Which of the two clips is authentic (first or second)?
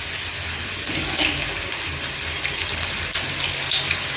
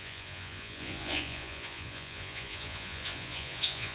first